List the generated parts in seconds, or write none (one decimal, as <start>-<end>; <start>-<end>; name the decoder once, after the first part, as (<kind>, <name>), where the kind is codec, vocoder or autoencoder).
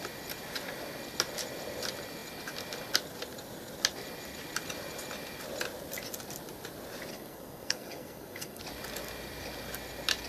7.1-8.6 (codec, SNAC)